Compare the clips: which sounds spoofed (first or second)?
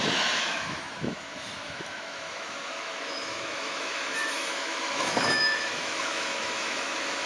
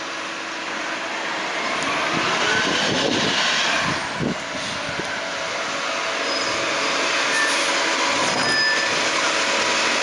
first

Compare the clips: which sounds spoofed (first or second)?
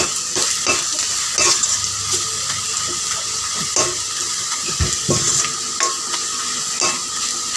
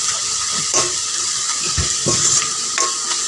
second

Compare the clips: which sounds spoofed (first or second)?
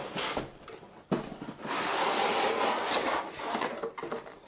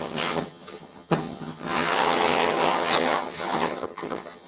second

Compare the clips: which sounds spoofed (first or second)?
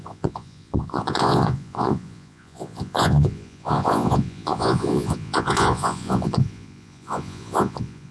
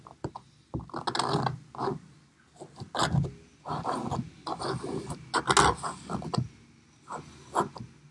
first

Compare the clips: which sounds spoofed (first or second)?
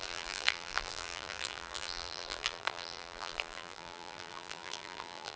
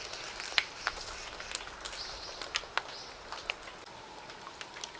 first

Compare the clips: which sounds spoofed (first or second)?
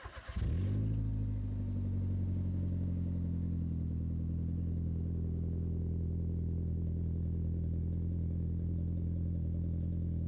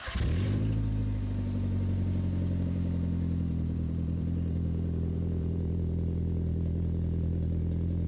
second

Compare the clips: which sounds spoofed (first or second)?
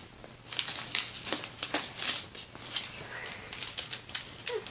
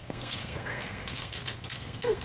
second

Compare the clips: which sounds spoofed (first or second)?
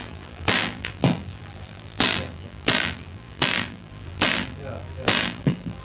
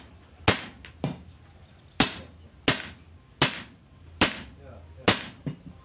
first